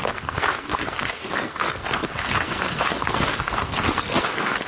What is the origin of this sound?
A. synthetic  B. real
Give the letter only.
A